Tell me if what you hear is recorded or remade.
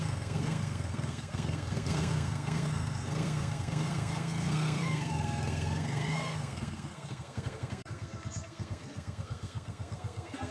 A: remade